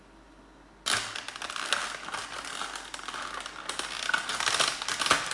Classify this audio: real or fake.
real